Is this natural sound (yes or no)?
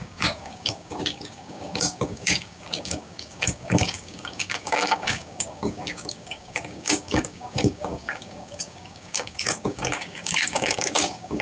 no